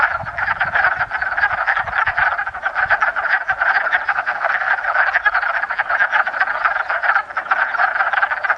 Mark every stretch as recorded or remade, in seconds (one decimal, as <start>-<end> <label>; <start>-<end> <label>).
0.0-4.1 recorded; 4.1-4.7 remade; 4.7-8.6 recorded